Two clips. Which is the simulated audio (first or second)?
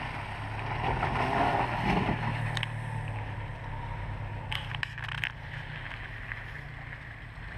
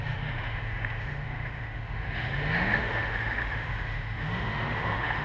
second